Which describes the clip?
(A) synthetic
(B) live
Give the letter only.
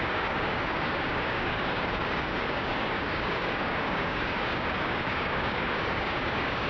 A